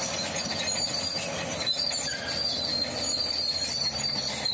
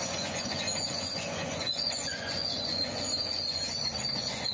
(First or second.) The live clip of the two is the first